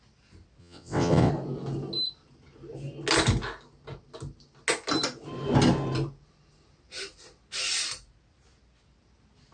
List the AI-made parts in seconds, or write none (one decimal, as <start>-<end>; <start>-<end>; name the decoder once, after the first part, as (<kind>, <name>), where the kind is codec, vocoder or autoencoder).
0.6-1.3 (vocoder, WaveNeXt)

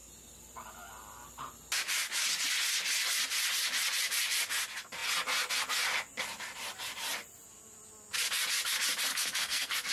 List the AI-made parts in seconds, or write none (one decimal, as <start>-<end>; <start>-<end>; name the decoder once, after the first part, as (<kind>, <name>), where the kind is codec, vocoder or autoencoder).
9.1-9.9 (codec, SNAC)

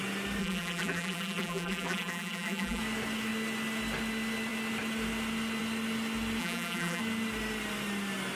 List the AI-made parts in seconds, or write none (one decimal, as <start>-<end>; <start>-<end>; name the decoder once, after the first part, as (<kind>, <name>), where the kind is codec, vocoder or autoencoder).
0.4-2.8 (vocoder, BigVGAN v2); 6.4-7.0